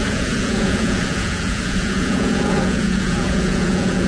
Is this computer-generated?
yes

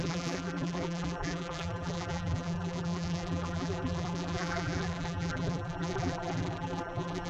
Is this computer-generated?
yes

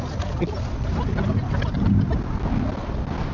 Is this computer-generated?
no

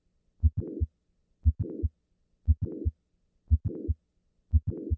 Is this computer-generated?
no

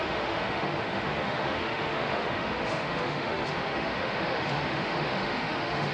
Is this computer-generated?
yes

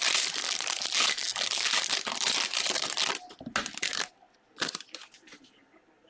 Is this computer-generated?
no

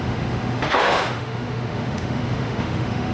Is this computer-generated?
yes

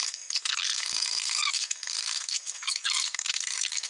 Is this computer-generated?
yes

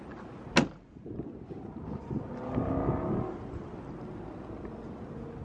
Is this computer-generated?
no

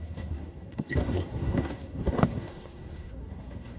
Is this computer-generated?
yes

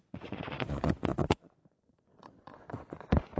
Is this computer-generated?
yes